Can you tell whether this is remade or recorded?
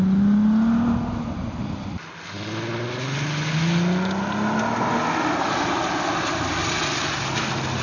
recorded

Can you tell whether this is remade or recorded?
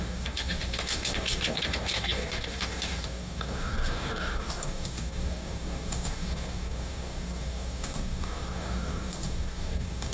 remade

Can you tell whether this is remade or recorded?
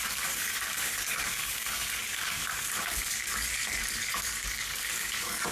remade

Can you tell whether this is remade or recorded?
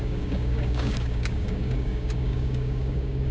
remade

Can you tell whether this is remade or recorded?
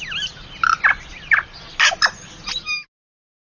recorded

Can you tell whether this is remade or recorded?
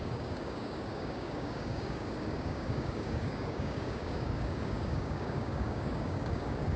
remade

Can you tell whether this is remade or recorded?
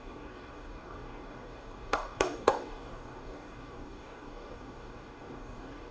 remade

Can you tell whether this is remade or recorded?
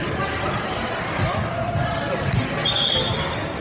recorded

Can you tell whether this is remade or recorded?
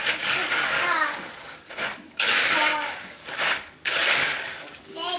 remade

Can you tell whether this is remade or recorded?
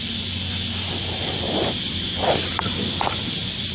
recorded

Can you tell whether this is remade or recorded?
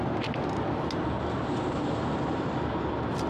recorded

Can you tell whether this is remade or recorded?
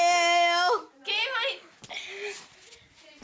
recorded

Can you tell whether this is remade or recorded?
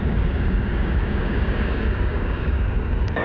remade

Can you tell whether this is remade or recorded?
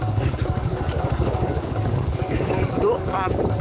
remade